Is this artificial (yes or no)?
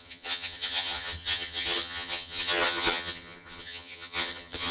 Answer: yes